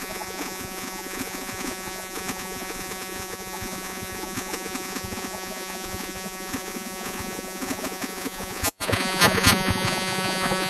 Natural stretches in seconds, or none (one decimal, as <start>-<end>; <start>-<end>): none